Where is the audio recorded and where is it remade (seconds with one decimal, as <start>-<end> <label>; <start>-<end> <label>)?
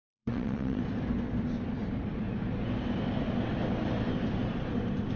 0.0-0.8 remade; 0.8-5.2 recorded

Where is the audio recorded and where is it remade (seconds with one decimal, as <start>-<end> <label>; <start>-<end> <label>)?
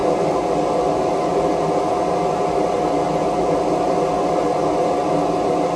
0.0-5.8 recorded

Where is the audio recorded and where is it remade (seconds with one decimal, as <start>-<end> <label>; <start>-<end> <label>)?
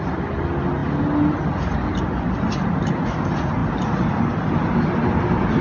0.0-5.6 recorded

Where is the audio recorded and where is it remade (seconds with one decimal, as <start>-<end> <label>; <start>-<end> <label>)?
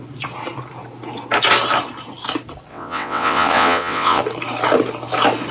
0.0-2.7 recorded; 2.7-4.2 remade; 4.2-5.5 recorded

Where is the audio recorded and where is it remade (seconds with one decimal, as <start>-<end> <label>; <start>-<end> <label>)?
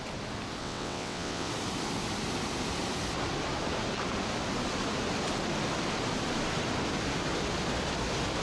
0.0-0.6 recorded; 0.6-1.5 remade; 1.5-8.4 recorded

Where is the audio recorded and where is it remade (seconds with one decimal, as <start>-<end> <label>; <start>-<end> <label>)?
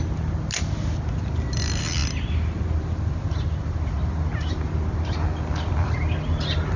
0.0-6.8 recorded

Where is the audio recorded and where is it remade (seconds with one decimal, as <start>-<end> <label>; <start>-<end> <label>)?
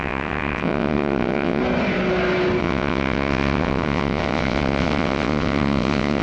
0.0-1.6 remade; 1.6-2.6 recorded; 2.6-6.2 remade